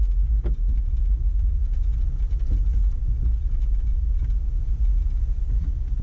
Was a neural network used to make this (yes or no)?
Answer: no